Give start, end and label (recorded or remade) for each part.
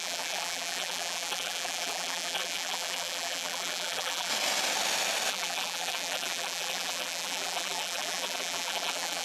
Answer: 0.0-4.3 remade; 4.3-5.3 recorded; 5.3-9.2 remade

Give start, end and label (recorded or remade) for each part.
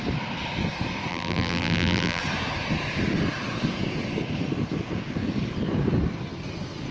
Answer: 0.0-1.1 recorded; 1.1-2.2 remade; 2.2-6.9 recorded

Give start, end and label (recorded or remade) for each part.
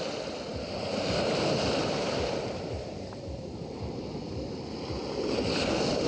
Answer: 0.0-1.8 recorded; 1.8-4.2 remade; 4.2-6.1 recorded